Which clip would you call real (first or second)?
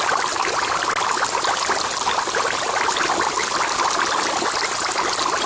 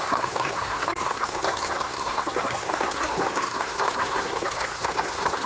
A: first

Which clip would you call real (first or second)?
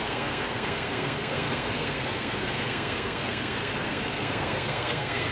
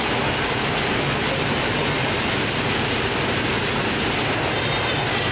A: second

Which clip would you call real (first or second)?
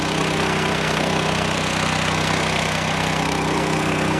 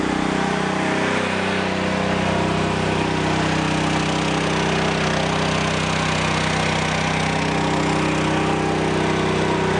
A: second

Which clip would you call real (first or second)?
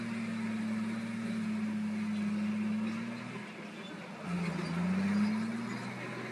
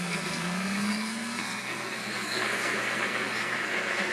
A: first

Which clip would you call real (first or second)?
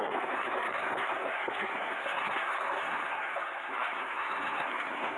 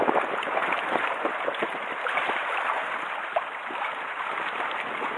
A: second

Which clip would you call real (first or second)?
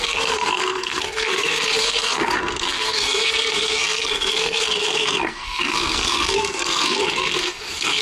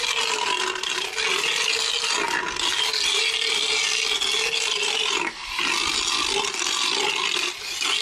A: second